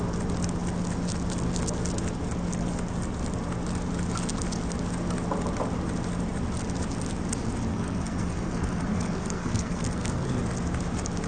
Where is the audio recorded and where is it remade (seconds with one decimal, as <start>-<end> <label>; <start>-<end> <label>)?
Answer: 0.0-7.7 recorded; 7.7-10.3 remade; 10.3-11.3 recorded